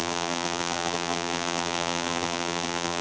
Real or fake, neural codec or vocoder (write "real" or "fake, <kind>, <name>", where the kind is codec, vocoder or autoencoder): fake, vocoder, BigVGAN v2